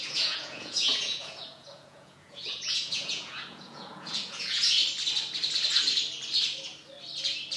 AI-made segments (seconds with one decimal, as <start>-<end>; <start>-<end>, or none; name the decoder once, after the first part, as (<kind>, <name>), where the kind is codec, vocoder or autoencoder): 0.0-4.8 (vocoder, Vocos)